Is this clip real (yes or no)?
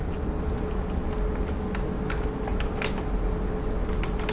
yes